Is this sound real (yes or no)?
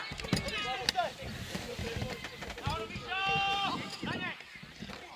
yes